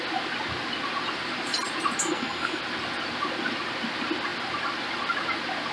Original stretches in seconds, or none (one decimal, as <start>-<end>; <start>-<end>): 0.0-2.0; 2.6-5.7